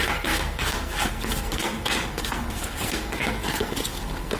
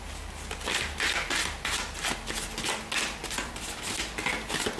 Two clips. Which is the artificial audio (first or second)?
first